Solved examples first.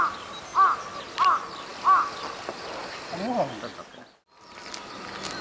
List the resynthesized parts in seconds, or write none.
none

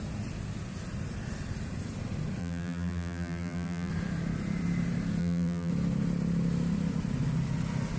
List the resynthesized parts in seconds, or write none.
2.4-3.9 (vocoder, BigVGAN v2); 5.2-5.7

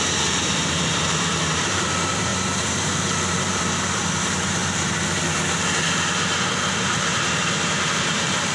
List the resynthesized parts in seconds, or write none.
0.0-4.6 (vocoder, BigVGAN v2); 6.7-8.5

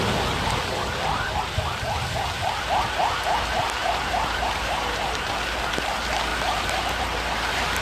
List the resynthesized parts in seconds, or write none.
3.8-5.3 (vocoder, BigVGAN v2)